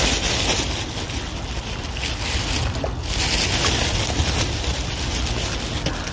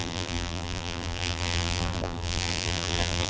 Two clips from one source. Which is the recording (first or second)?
first